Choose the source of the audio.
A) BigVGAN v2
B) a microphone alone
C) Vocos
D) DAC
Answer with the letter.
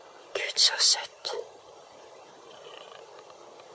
B